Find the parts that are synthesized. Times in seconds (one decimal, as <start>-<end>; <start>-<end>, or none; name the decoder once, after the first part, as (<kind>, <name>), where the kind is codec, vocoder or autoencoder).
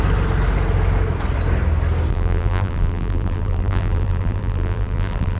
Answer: 2.1-5.4 (vocoder, BigVGAN v2)